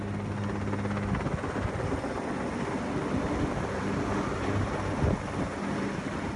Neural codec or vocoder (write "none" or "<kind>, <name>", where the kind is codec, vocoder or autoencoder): none